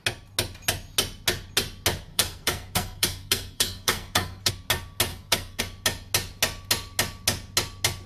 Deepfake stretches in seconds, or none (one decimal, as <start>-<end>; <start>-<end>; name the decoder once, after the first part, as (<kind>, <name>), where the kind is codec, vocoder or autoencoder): 2.1-4.5 (codec, SNAC); 5.1-5.6